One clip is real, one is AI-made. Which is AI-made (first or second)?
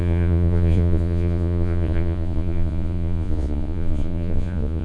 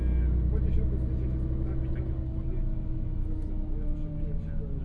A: first